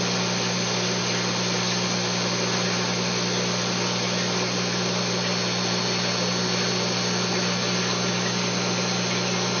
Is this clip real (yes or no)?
yes